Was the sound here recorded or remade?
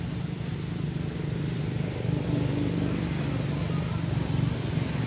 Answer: recorded